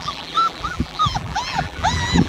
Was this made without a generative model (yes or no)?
no